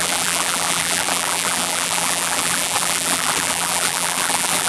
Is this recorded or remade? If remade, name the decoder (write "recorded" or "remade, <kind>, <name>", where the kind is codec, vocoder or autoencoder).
remade, vocoder, BigVGAN v2